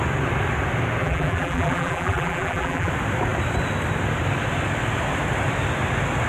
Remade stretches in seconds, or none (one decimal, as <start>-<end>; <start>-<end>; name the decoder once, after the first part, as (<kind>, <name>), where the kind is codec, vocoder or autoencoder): 1.0-2.9 (vocoder, BigVGAN v2)